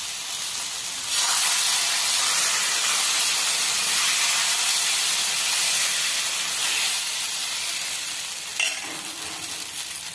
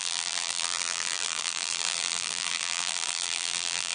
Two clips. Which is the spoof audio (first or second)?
second